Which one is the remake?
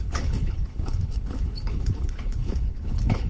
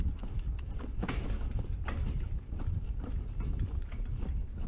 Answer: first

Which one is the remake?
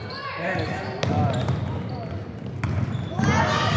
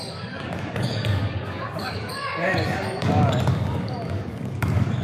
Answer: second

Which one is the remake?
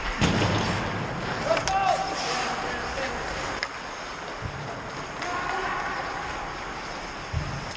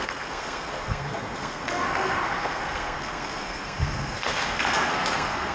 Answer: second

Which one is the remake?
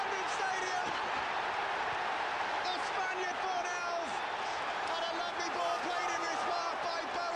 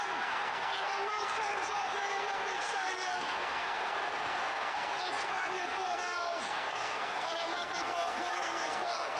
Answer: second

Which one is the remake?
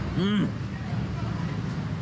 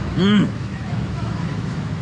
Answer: second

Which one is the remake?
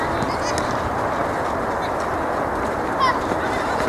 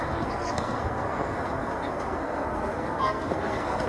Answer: second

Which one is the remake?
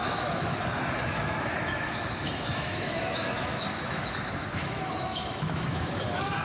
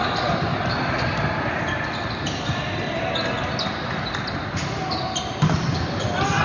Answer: first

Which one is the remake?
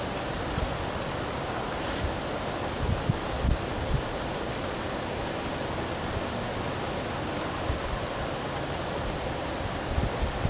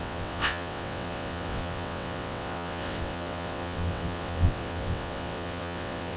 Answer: second